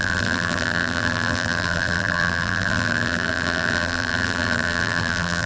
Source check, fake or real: fake